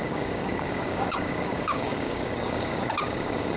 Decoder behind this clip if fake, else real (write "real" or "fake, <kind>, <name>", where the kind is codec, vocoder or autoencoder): fake, codec, DAC